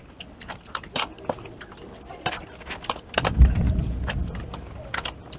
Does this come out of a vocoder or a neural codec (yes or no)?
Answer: yes